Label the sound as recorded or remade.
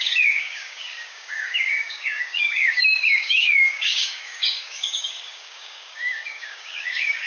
remade